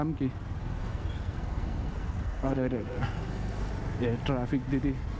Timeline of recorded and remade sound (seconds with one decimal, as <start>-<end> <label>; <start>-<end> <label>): 0.0-0.6 recorded; 0.6-3.7 remade; 3.7-5.2 recorded